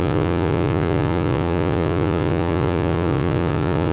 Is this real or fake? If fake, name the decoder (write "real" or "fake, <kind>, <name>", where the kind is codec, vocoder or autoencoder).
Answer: fake, vocoder, Vocos